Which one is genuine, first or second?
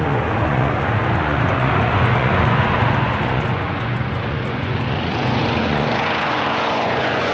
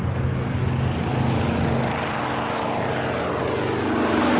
second